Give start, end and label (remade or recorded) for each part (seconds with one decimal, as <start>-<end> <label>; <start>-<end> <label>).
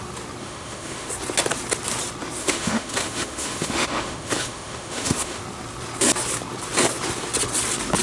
0.0-0.4 recorded; 0.4-1.1 remade; 1.1-2.4 recorded; 2.4-5.4 remade; 5.4-8.0 recorded